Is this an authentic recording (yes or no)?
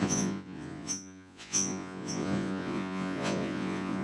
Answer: no